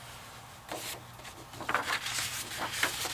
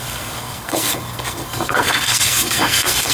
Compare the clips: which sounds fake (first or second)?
second